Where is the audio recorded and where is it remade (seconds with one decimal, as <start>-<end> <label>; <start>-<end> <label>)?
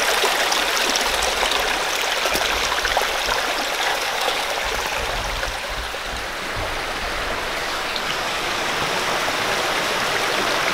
0.0-3.9 recorded; 3.9-4.5 remade; 4.5-7.6 recorded; 7.6-8.7 remade; 8.7-10.7 recorded